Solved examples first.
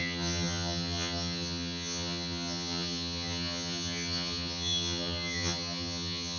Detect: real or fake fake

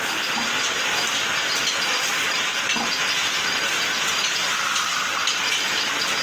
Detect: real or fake real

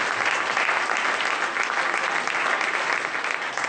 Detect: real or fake real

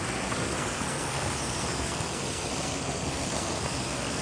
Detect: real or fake fake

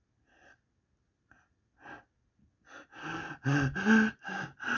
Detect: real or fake real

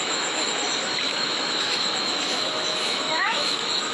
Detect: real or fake fake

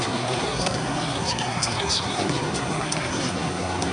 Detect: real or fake fake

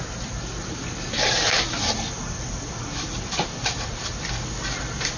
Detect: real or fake fake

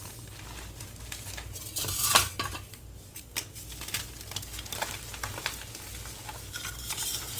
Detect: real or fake real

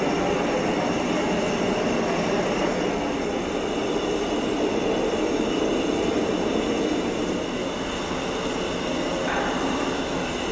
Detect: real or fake real